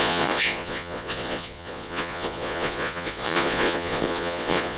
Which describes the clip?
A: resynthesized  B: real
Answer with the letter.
A